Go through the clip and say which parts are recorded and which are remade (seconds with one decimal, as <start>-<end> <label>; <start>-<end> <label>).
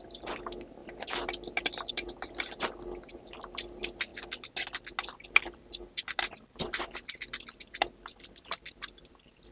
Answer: 0.0-0.8 remade; 0.8-1.9 recorded; 1.9-4.1 remade; 4.1-6.5 recorded; 6.5-9.5 remade